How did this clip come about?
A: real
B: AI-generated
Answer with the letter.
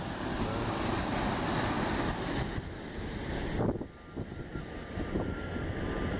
A